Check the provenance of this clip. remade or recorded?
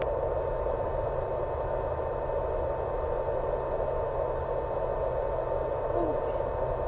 recorded